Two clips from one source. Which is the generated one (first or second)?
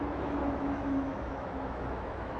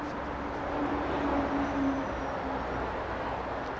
first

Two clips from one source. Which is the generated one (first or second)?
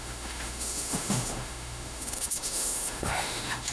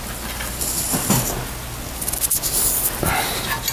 first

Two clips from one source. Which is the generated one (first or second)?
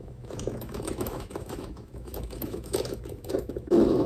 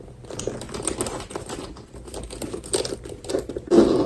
first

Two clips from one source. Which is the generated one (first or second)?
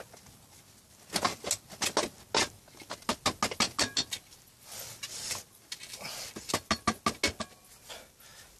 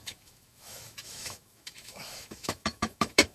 second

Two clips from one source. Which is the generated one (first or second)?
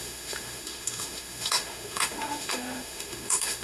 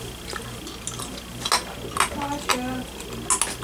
first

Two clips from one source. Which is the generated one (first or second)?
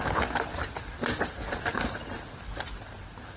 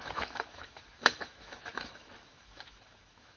second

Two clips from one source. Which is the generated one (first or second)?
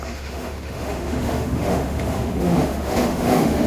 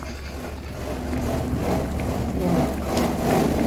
first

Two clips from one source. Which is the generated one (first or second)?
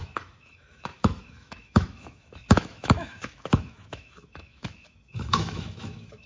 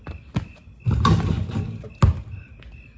first